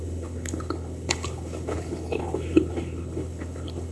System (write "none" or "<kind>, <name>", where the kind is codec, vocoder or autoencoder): codec, HILCodec